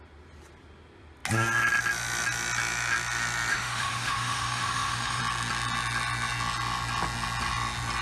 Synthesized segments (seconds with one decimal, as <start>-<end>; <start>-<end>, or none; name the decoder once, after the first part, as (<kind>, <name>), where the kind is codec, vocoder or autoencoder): 3.5-5.2 (autoencoder, DAC-VAE)